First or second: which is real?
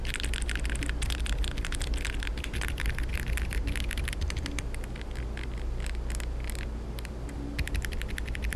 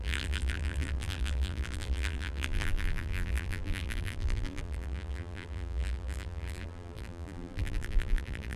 first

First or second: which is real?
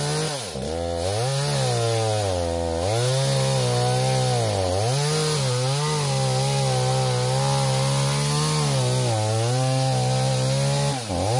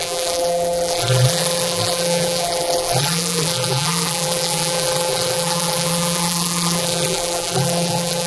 first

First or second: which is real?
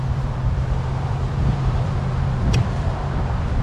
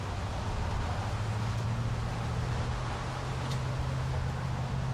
second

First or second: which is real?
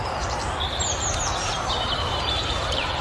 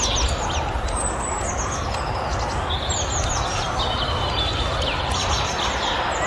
second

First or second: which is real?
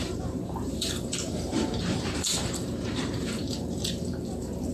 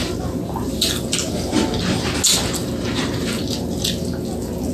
second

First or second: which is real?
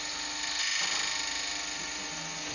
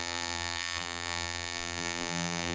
first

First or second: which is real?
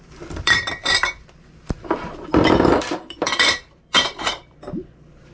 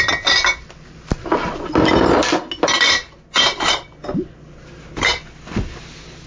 second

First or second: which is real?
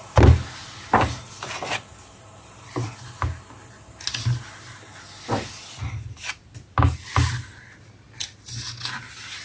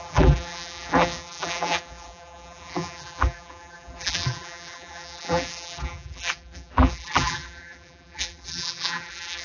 first